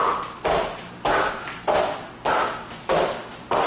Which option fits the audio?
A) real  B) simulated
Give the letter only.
A